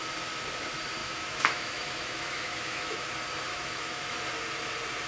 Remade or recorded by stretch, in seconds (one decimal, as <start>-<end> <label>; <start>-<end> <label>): 0.0-1.0 recorded; 1.0-3.1 remade; 3.1-3.5 recorded; 3.5-4.2 remade; 4.2-5.1 recorded

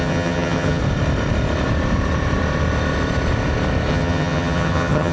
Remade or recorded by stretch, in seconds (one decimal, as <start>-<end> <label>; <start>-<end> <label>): 0.0-0.8 remade; 0.8-3.9 recorded; 3.9-5.1 remade

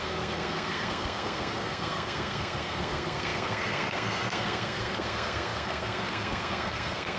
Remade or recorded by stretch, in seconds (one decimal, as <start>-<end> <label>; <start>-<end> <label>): 0.0-7.2 remade

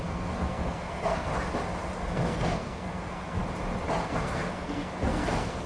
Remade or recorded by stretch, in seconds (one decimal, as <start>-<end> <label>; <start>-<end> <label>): 0.0-1.3 remade; 1.3-2.1 recorded; 2.1-3.4 remade; 3.4-4.0 recorded; 4.0-5.7 remade

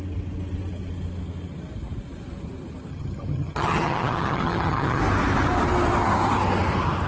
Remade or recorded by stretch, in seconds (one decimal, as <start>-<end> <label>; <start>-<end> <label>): 0.0-2.9 recorded; 2.9-5.0 remade; 5.0-7.1 recorded

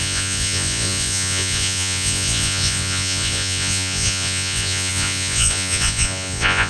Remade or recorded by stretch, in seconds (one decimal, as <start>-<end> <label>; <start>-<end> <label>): 0.0-6.7 remade

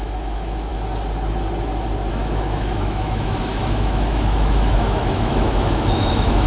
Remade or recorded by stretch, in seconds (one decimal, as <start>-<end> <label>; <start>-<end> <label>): 0.0-0.7 remade; 0.7-2.1 recorded; 2.1-6.5 remade

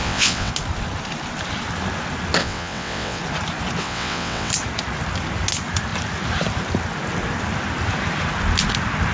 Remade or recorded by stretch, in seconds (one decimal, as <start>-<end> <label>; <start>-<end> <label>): 0.0-0.5 remade; 0.5-2.4 recorded; 2.4-3.2 remade; 3.2-3.8 recorded; 3.8-4.5 remade; 4.5-9.1 recorded